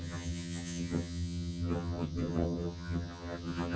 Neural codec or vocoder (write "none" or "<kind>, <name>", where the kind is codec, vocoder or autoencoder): vocoder, HiFi-GAN